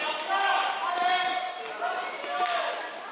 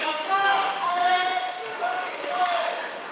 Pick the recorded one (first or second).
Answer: first